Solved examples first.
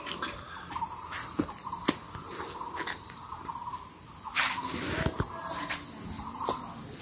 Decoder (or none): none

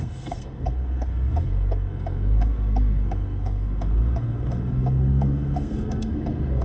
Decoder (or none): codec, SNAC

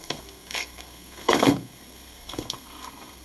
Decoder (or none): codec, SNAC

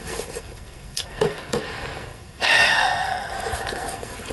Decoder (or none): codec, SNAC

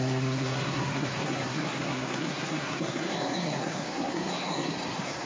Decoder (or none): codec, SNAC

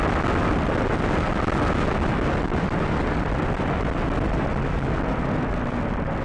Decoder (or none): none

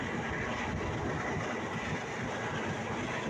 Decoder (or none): none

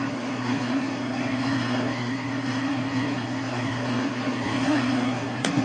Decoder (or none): codec, SNAC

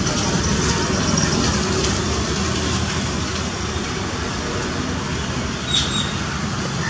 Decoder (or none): none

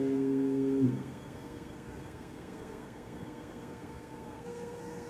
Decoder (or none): codec, SNAC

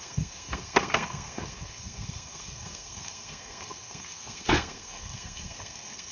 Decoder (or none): codec, SNAC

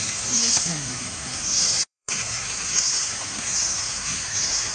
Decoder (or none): codec, SNAC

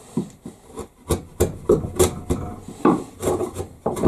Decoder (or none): none